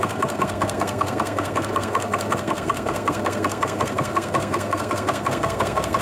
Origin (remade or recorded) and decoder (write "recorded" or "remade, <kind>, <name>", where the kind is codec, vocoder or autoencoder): remade, codec, SNAC